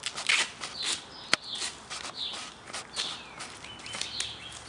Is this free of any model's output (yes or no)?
yes